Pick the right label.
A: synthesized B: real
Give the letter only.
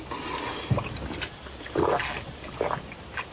B